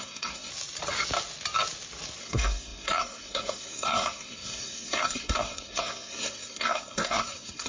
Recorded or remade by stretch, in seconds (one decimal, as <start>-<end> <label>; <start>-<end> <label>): 0.0-0.5 remade; 0.5-2.2 recorded; 2.2-7.7 remade